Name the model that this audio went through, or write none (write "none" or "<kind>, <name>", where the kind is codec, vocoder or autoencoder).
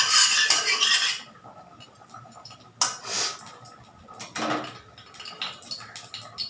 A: none